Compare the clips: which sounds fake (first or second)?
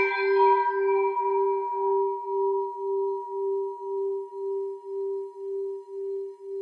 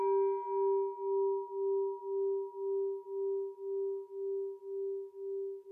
first